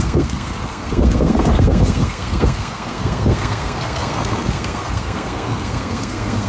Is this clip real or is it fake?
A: fake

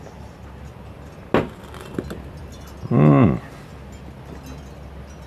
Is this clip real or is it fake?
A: real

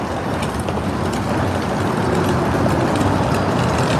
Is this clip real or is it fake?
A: real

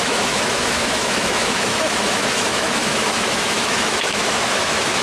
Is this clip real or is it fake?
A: fake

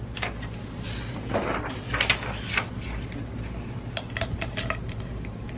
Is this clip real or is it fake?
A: real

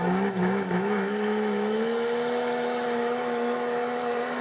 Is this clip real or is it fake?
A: fake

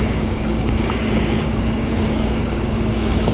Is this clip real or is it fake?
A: fake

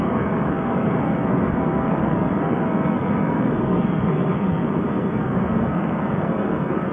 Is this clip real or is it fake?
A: fake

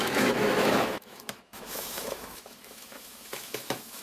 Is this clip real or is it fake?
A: fake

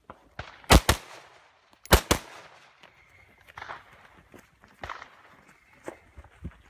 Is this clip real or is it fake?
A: real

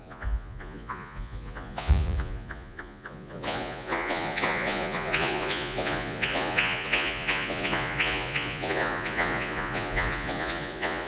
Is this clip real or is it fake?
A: fake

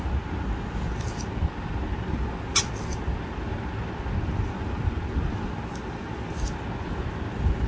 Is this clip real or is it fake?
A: real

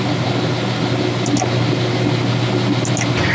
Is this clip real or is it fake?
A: real